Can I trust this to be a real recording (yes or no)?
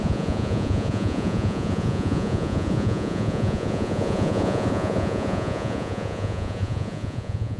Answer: no